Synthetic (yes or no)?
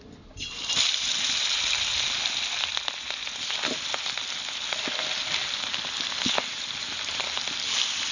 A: no